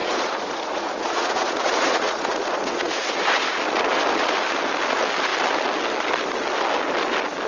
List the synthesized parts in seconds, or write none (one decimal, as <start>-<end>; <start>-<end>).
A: 0.0-3.1